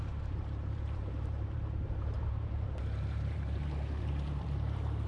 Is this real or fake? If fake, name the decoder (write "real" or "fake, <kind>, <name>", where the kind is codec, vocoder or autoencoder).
fake, vocoder, BigVGAN v2